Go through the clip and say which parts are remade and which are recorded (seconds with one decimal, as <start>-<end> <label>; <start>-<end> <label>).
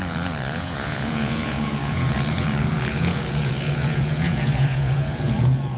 0.0-5.8 remade